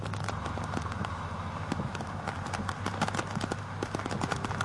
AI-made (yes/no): no